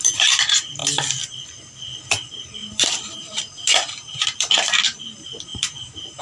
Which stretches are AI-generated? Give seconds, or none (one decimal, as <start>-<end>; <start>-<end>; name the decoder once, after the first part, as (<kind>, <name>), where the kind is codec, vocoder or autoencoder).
0.0-0.8 (vocoder, BigVGAN v2); 2.1-6.2